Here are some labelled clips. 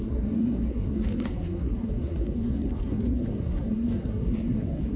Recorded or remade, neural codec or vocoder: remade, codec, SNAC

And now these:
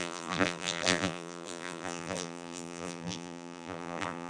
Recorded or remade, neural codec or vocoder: remade, vocoder, BigVGAN v2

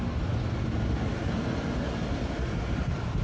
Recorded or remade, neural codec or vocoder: recorded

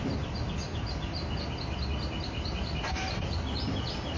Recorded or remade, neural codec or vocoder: recorded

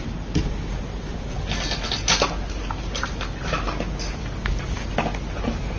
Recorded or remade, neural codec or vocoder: recorded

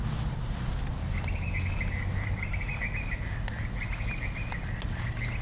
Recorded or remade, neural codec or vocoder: recorded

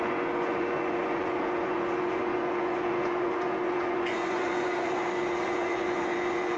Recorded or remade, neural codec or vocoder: remade, vocoder, Vocos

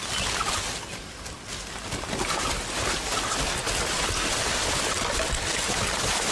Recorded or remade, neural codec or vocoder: recorded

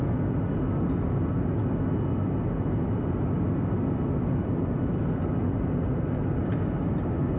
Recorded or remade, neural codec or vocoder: recorded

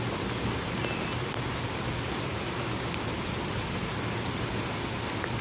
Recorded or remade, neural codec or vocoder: recorded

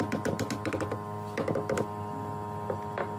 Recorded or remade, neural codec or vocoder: recorded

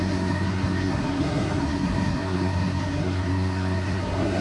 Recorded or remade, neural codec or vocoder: remade, codec, SNAC